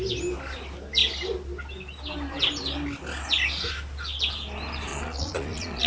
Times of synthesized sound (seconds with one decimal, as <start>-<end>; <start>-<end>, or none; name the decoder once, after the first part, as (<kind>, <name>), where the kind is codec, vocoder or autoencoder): 4.9-5.9 (vocoder, Vocos)